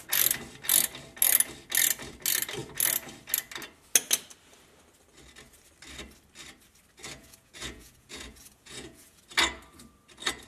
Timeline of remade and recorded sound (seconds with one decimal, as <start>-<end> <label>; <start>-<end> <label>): 0.0-7.2 recorded; 7.2-9.2 remade; 9.2-10.5 recorded